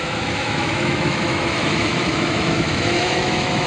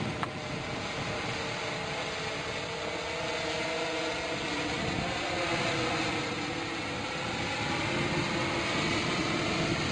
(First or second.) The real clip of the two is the second